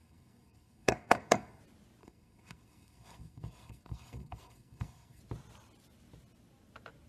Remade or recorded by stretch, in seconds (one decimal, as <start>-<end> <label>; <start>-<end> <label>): 0.0-1.6 remade; 1.6-2.0 recorded; 2.0-5.2 remade; 5.2-7.1 recorded